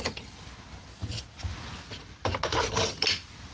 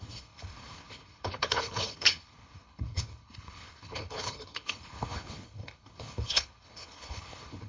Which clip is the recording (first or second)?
first